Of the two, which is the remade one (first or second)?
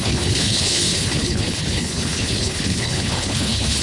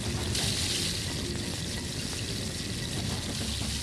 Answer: first